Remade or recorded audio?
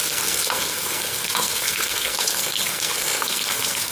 remade